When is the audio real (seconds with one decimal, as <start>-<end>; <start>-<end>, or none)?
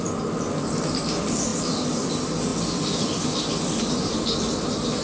0.0-5.0